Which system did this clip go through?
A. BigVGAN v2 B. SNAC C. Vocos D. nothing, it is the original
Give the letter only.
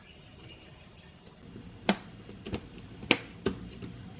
D